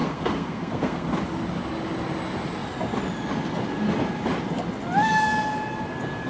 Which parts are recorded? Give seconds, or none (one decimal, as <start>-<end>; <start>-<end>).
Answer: 1.1-6.3